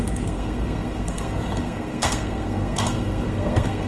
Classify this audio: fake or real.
fake